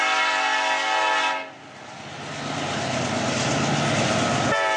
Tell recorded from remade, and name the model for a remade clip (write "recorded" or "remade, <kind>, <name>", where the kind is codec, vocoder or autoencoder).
recorded